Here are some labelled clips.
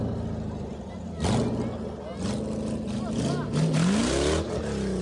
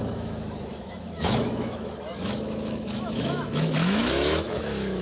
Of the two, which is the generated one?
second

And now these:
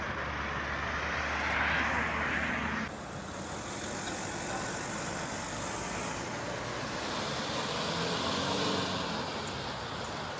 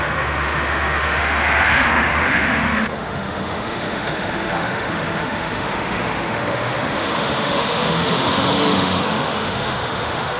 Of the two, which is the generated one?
second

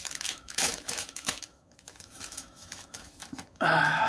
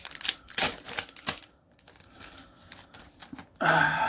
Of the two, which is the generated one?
first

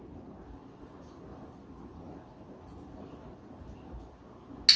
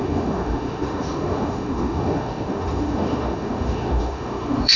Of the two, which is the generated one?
second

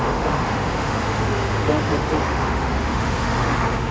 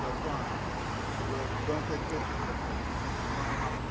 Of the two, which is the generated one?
first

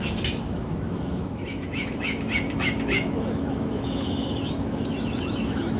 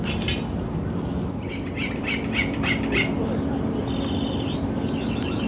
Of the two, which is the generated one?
first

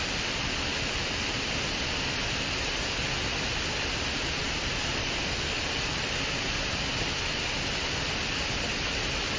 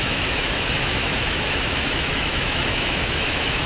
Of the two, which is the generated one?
second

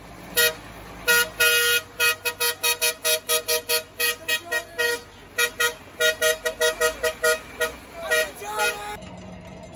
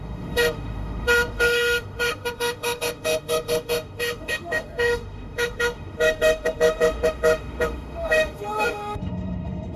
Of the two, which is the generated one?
second